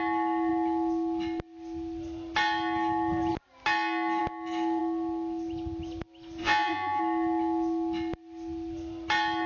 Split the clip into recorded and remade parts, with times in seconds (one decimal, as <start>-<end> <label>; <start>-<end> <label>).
0.0-6.4 recorded; 6.4-7.0 remade; 7.0-9.5 recorded